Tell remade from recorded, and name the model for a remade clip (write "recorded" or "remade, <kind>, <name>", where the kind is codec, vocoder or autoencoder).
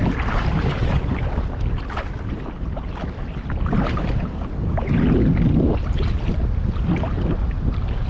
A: recorded